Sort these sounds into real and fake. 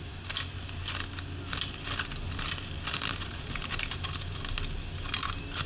real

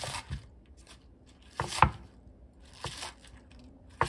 real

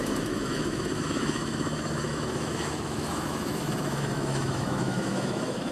fake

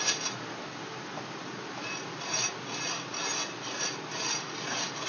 real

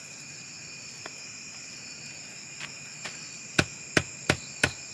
real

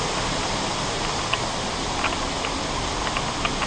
real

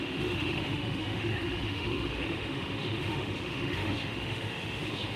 fake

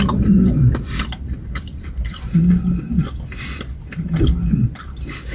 real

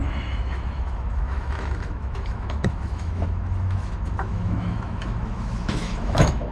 fake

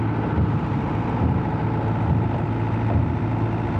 real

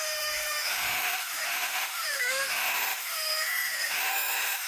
fake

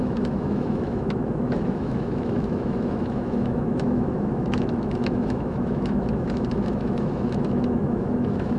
fake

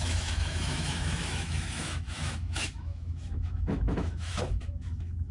fake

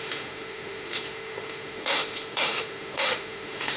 fake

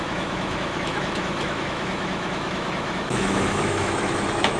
fake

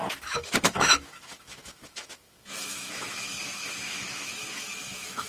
fake